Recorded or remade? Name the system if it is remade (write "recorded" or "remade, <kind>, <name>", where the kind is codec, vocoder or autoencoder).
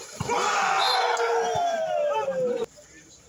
remade, vocoder, BigVGAN v2